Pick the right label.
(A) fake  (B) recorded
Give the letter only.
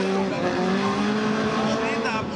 B